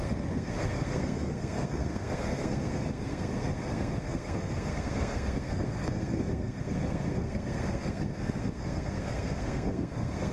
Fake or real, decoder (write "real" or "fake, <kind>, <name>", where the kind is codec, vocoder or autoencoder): fake, codec, SNAC